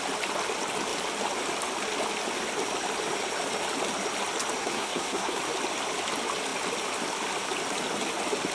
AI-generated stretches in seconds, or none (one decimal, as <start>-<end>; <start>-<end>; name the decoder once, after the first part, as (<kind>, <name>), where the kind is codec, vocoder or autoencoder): 4.6-5.4 (codec, SNAC)